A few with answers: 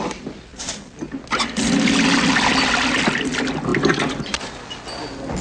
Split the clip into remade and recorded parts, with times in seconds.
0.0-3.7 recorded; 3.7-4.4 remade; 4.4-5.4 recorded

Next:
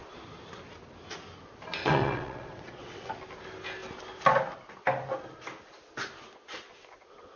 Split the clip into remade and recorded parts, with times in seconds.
0.0-1.8 recorded; 1.8-3.1 remade; 3.1-7.4 recorded

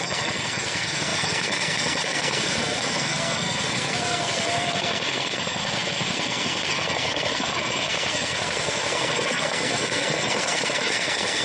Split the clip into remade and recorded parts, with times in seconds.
0.0-11.4 remade